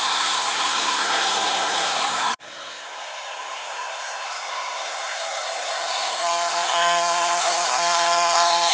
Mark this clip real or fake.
fake